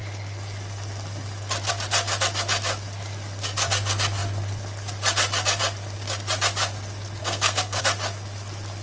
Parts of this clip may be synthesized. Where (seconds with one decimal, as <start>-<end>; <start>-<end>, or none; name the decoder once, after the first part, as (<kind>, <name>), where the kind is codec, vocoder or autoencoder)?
7.2-7.8 (codec, SNAC)